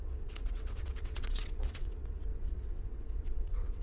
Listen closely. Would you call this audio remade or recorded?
remade